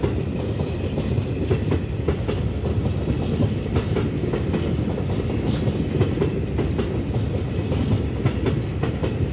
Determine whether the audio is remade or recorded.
recorded